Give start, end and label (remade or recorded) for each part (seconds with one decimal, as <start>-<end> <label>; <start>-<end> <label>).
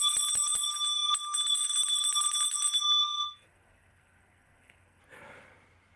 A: 0.0-3.0 recorded; 3.0-5.0 remade; 5.0-6.0 recorded